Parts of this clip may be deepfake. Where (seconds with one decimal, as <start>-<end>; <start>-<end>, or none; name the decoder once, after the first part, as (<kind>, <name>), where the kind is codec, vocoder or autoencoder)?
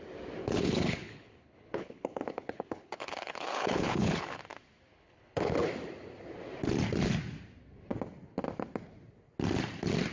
0.4-4.4 (codec, HILCodec); 4.9-5.7